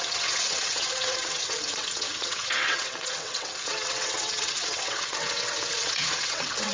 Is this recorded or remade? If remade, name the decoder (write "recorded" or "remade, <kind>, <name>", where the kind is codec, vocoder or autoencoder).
remade, vocoder, WaveNeXt